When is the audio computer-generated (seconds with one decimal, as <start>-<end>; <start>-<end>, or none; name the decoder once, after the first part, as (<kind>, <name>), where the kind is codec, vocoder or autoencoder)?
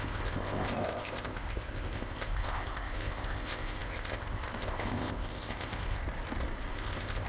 0.0-6.0 (codec, ZipCodec); 6.7-7.3